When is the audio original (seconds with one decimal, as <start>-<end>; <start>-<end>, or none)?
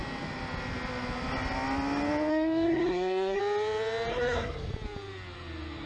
0.0-2.3; 3.4-4.1; 4.7-5.9